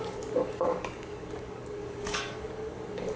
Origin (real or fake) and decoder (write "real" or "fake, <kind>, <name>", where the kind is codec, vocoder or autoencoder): fake, codec, DAC